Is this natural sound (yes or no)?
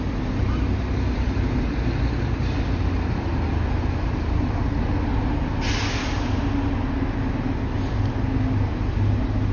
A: yes